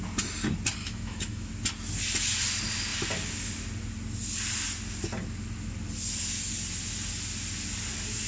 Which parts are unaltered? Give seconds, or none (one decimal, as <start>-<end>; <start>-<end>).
0.0-0.8; 1.5-8.3